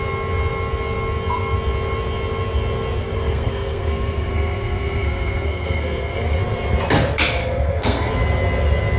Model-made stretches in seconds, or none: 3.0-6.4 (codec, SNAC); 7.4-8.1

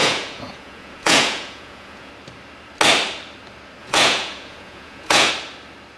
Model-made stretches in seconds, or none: 0.0-2.1 (vocoder, Vocos); 3.8-5.3